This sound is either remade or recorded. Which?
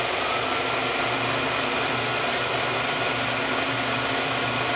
recorded